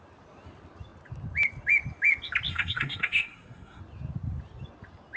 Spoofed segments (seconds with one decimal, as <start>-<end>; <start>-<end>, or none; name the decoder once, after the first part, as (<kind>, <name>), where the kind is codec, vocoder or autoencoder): 2.5-3.8 (codec, SNAC)